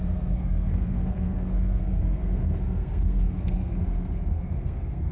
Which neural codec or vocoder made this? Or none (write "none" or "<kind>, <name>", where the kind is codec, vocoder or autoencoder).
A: codec, SNAC